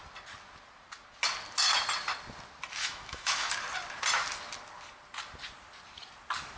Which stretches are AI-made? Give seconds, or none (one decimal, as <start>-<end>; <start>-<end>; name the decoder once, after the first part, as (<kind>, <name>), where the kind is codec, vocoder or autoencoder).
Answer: 2.8-3.5 (autoencoder, DAC-VAE)